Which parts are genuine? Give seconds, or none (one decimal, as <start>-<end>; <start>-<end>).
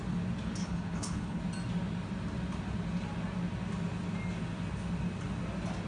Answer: 0.0-0.6; 1.4-5.9